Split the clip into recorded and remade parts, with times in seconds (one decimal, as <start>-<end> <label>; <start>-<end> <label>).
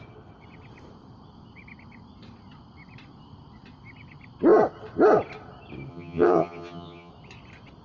0.0-5.9 recorded; 5.9-7.1 remade; 7.1-7.8 recorded